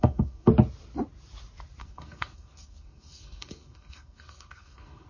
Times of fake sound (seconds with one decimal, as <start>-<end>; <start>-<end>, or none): 0.0-0.5; 1.8-5.1